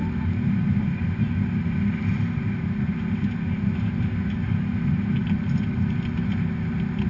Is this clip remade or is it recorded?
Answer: recorded